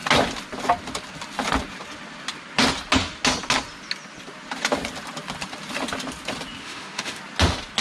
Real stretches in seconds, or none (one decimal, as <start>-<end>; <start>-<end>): 0.0-6.6; 7.2-7.8